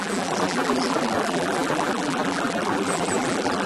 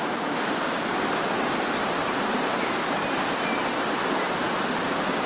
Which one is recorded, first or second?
second